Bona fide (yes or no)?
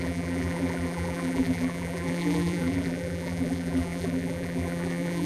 no